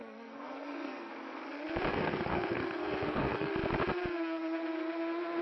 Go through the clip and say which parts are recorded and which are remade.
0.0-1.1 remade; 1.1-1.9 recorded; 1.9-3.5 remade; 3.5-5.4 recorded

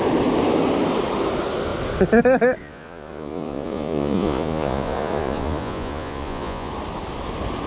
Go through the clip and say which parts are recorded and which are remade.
0.0-2.6 recorded; 2.6-6.7 remade; 6.7-7.7 recorded

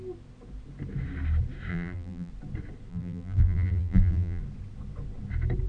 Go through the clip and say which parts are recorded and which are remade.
0.0-1.7 recorded; 1.7-2.3 remade; 2.3-2.9 recorded; 2.9-4.4 remade; 4.4-5.7 recorded

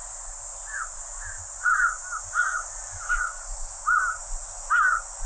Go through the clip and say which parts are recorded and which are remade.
0.0-5.3 recorded

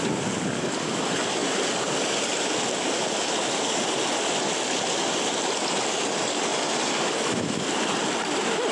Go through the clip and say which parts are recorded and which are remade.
0.0-8.7 recorded